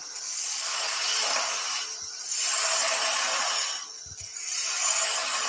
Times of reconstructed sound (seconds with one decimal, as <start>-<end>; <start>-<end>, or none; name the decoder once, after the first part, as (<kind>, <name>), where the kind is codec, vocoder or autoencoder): none